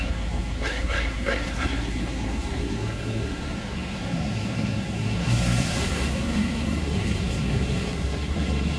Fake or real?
fake